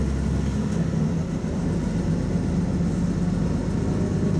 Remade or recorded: recorded